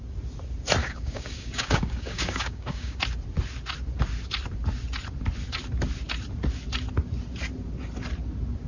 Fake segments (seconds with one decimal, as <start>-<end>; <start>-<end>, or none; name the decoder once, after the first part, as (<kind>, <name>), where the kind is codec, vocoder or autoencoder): 0.8-3.0 (codec, DAC)